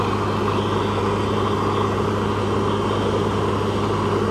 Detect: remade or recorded recorded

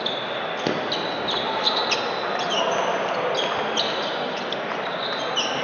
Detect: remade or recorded recorded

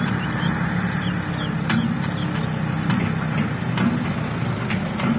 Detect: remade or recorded recorded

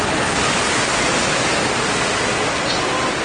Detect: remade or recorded recorded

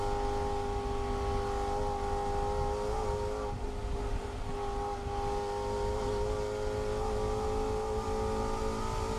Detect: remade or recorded recorded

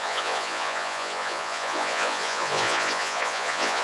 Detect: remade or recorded remade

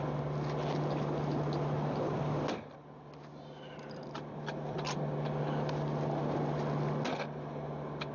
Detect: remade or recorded recorded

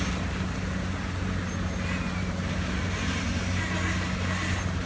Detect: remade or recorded recorded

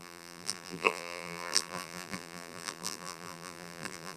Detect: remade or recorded remade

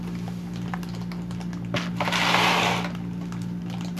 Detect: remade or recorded recorded